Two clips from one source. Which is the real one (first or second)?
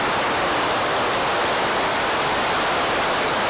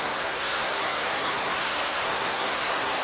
first